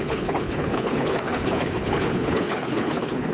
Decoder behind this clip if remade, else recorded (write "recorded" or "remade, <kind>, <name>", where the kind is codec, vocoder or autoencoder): remade, codec, HILCodec